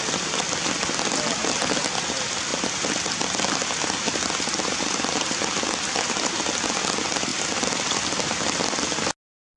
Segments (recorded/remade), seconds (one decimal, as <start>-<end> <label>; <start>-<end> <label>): 0.0-9.6 recorded